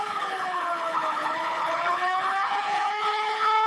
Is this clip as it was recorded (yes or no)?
no